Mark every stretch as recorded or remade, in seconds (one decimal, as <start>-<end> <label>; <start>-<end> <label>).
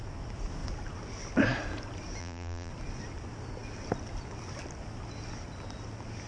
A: 0.0-2.2 recorded; 2.2-2.7 remade; 2.7-6.3 recorded